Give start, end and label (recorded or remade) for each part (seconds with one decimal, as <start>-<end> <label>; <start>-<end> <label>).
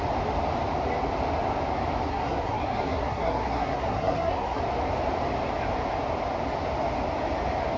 0.0-2.1 recorded; 2.1-4.6 remade; 4.6-7.8 recorded